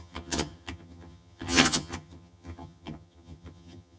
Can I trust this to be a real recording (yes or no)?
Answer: no